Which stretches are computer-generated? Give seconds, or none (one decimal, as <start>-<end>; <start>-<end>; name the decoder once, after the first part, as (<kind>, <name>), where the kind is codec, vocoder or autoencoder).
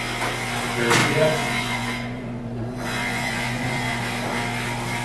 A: 1.0-4.0 (vocoder, Vocos)